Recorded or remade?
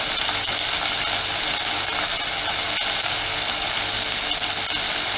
recorded